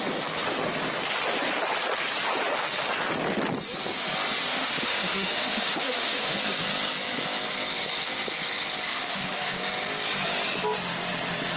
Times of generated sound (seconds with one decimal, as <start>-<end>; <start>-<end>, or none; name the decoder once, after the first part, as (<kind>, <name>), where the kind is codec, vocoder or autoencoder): 4.5-6.4 (autoencoder, DAC-VAE); 8.9-9.6